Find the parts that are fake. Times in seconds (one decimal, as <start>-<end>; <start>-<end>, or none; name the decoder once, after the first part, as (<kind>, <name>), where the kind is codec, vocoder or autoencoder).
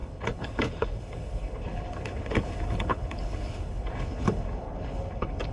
0.0-5.5 (codec, HILCodec)